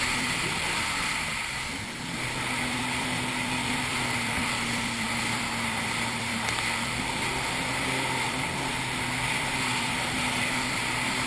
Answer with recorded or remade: remade